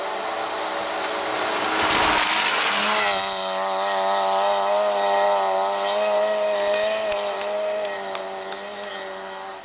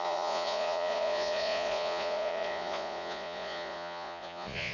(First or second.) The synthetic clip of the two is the second